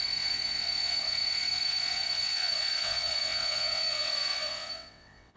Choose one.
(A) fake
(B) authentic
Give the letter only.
A